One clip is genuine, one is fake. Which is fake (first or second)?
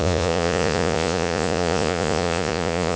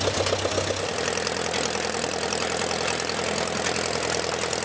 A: first